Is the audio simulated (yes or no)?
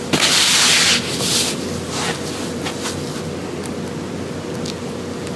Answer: no